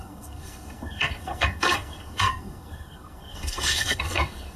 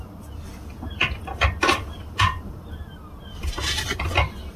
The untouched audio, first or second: second